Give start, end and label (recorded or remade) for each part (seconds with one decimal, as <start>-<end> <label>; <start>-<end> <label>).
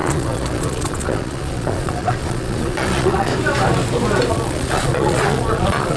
0.0-3.3 remade; 3.3-4.3 recorded; 4.3-6.0 remade